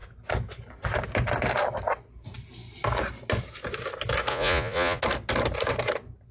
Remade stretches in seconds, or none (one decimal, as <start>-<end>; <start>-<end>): 4.3-5.0

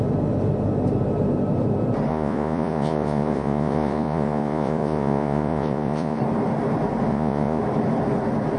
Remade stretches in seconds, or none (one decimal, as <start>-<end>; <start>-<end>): 2.1-6.2; 7.1-7.6

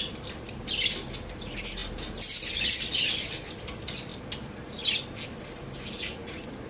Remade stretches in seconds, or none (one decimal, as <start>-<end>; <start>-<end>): none

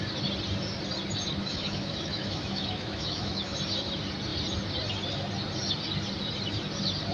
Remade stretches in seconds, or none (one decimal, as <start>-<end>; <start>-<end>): 1.4-3.6

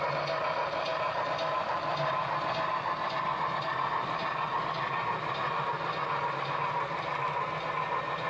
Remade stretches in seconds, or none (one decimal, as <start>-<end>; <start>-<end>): none

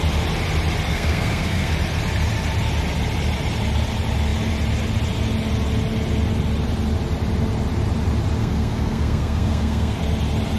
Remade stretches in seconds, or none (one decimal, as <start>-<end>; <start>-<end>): 0.9-1.7; 8.4-10.0

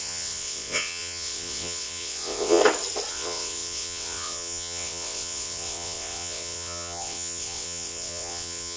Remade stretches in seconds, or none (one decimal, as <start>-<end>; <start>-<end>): 0.0-2.6; 3.1-8.8

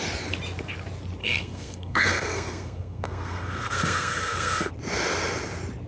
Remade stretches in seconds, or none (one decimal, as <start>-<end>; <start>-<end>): 1.2-4.7